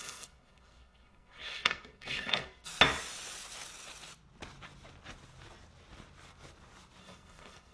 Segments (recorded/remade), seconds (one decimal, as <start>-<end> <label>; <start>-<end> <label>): 0.0-2.7 remade; 2.7-7.0 recorded; 7.0-7.7 remade